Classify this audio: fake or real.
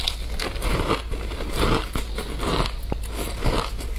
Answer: real